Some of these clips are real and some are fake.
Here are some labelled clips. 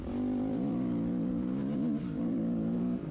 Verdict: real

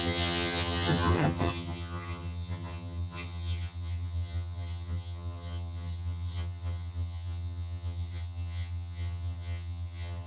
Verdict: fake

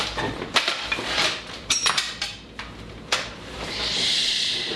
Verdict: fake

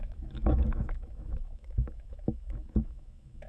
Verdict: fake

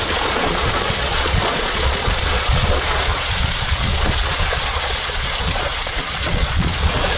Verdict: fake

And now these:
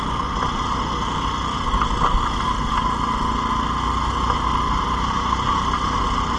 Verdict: real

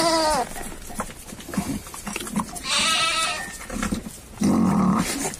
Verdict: real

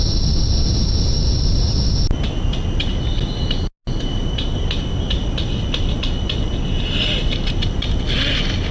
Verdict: real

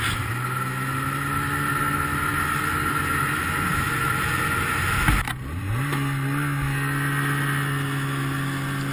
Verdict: real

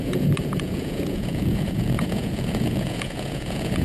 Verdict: fake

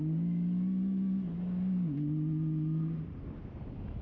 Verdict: real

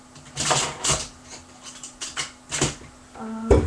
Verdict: real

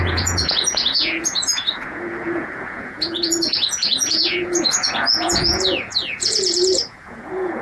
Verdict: fake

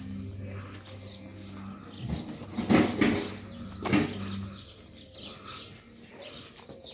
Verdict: real